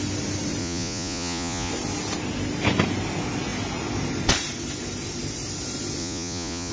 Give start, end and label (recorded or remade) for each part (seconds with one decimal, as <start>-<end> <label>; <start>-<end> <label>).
0.0-0.6 recorded; 0.6-1.7 remade; 1.7-6.0 recorded; 6.0-6.7 remade